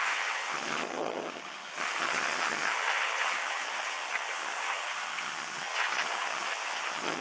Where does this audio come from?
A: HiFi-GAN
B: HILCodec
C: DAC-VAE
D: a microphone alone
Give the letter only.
A